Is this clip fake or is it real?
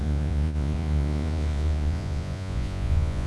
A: fake